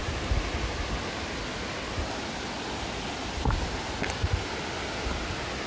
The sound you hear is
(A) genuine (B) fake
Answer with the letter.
A